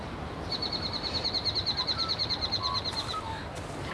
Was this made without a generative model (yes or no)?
no